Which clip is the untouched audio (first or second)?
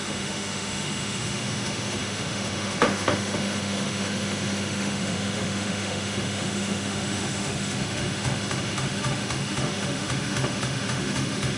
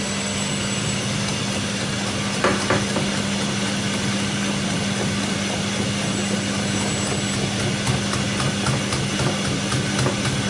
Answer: second